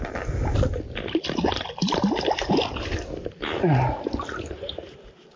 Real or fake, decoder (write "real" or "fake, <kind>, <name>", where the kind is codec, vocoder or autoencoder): real